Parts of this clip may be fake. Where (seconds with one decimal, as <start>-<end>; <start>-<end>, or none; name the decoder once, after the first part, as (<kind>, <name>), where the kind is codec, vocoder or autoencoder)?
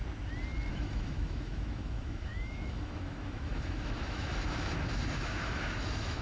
0.7-6.2 (autoencoder, DAC-VAE)